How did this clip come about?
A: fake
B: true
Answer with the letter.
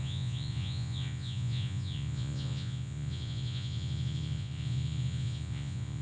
A